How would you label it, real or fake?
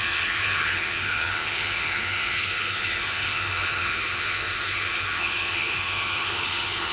fake